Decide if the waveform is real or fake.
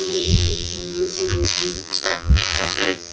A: fake